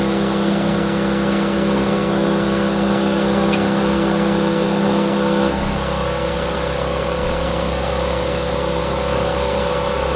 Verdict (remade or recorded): remade